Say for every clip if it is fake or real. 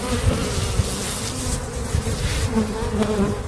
real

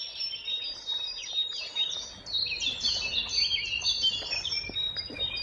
real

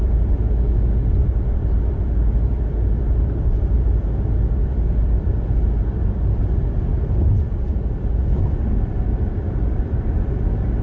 fake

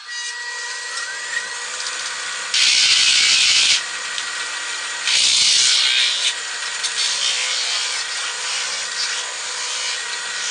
real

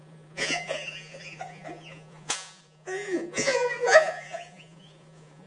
fake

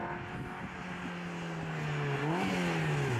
real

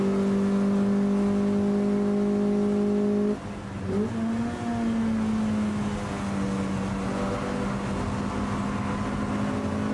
real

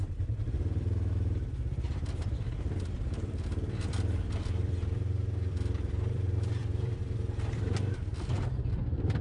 fake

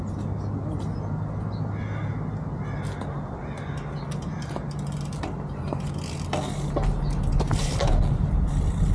real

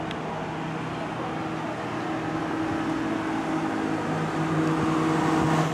real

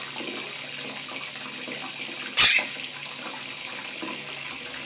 real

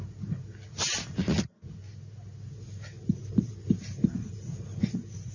real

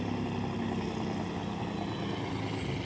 real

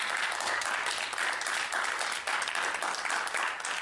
real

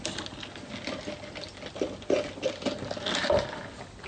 real